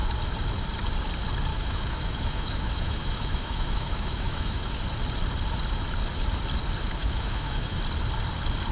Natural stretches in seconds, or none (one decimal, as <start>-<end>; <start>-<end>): 0.0-1.5; 4.7-7.0; 7.8-8.7